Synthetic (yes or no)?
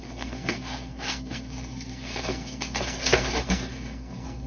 yes